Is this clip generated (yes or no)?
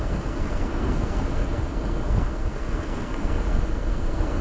yes